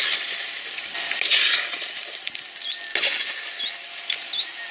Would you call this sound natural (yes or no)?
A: yes